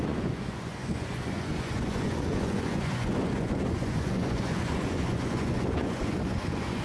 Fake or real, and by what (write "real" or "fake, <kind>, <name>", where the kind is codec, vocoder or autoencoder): fake, vocoder, Vocos